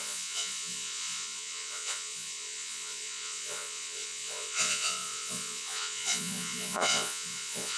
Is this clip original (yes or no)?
no